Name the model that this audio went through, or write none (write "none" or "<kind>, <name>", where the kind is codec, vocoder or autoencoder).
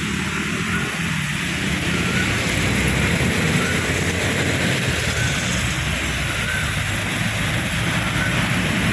none